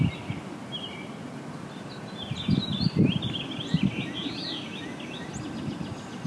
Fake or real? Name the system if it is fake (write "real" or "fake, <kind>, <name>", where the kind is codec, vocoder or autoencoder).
real